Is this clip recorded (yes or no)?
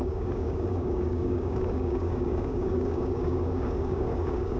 no